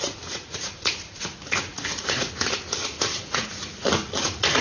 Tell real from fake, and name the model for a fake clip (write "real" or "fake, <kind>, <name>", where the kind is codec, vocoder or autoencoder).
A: fake, vocoder, Vocos